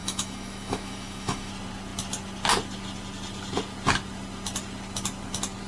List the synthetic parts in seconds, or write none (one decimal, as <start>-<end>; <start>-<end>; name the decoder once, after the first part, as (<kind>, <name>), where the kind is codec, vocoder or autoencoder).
0.0-1.5 (autoencoder, DAC-VAE)